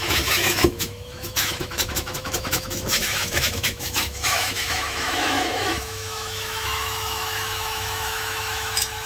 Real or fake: fake